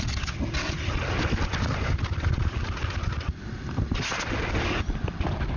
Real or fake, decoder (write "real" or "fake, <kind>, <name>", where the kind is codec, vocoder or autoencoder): real